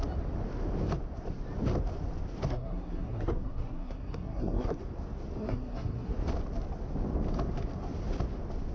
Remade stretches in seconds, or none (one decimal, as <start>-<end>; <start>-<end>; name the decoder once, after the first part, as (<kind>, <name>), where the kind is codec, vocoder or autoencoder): 2.5-4.8 (codec, SNAC); 5.4-6.1